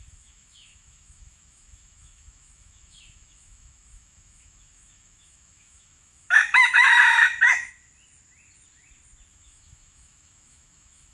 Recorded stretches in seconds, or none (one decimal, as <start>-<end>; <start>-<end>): 7.1-9.3